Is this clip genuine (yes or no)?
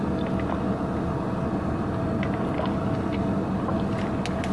yes